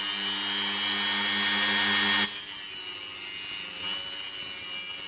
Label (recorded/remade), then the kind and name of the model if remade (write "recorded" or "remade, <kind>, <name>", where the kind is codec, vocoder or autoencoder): recorded